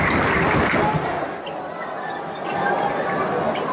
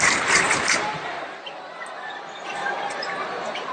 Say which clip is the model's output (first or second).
second